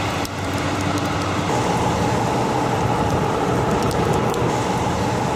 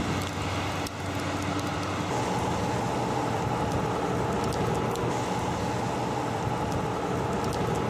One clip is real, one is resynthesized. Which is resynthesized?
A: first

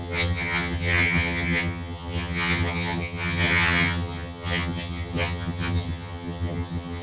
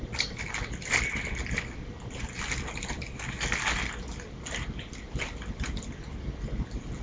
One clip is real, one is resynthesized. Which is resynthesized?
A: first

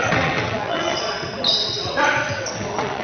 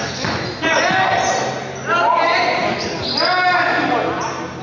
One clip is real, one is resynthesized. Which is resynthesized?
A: first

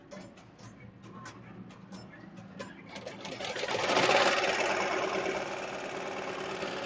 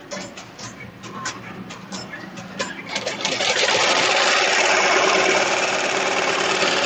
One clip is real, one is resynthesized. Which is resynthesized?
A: second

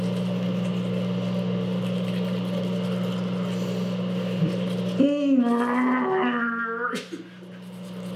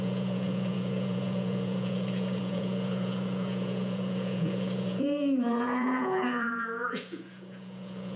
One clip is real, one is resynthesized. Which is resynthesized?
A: second